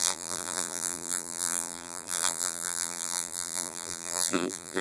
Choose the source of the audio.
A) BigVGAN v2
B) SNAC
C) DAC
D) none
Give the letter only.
A